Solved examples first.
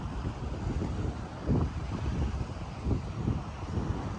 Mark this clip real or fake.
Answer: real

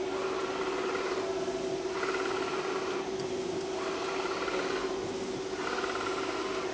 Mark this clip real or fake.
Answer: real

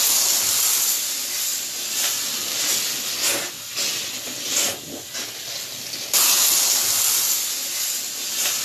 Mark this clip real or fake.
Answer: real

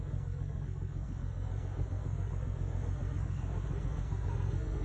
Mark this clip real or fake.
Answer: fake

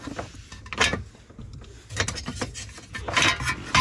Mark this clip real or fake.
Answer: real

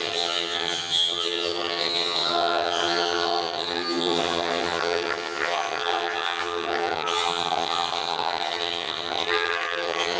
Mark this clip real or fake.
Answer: fake